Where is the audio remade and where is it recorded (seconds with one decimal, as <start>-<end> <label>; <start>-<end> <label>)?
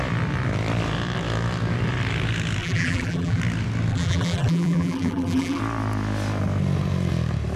0.0-2.6 recorded; 2.6-3.4 remade; 3.4-3.9 recorded; 3.9-5.6 remade; 5.6-7.6 recorded